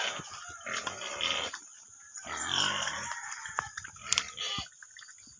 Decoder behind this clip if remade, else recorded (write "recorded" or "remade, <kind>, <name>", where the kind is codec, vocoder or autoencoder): recorded